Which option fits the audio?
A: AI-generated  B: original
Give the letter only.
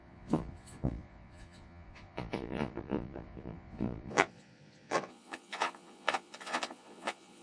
A